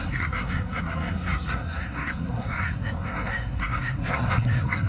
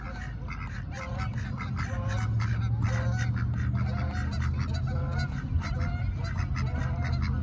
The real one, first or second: second